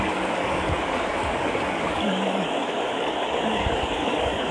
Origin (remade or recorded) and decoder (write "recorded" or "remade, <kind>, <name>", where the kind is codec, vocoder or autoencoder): remade, codec, DAC